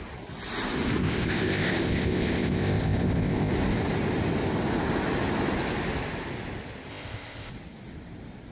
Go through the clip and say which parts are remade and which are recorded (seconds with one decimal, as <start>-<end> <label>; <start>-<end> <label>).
0.0-1.0 recorded; 1.0-3.5 remade; 3.5-6.9 recorded; 6.9-7.5 remade; 7.5-8.5 recorded